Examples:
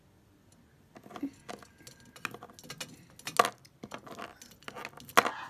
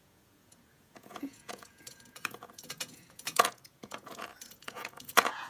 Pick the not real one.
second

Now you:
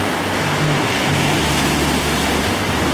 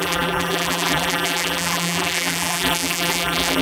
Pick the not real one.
second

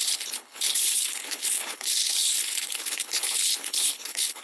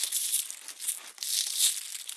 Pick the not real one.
first